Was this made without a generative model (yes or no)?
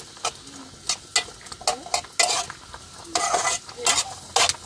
yes